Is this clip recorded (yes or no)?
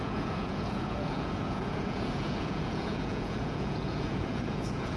no